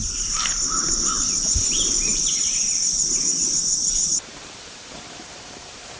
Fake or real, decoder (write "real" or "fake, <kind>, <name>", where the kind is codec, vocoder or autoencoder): fake, vocoder, BigVGAN v2